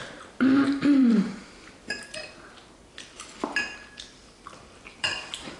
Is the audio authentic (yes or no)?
no